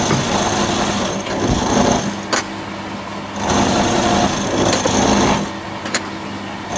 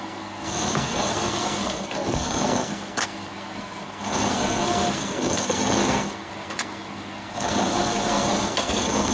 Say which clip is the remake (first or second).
second